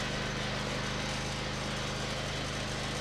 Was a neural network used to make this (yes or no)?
no